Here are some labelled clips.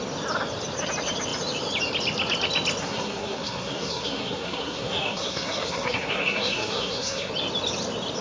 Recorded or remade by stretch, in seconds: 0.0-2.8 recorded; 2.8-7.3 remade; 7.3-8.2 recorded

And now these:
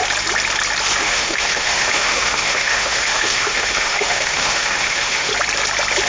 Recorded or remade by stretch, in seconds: 0.0-1.0 recorded; 1.0-5.3 remade; 5.3-6.1 recorded

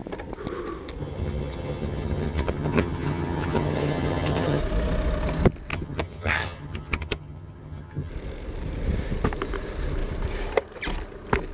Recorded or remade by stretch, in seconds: 0.0-1.0 recorded; 1.0-4.6 remade; 4.6-5.7 recorded; 5.7-8.1 remade; 8.1-11.5 recorded